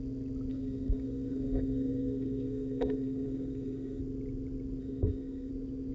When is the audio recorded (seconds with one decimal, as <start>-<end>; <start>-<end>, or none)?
0.0-0.5; 4.0-4.8; 5.5-5.9